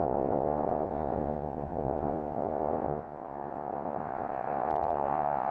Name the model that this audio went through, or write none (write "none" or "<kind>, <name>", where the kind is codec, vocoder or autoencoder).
vocoder, Vocos